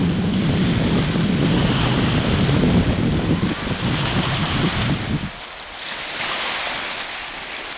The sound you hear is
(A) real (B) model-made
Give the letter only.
A